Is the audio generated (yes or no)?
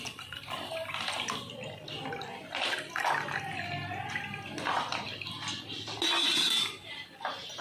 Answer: no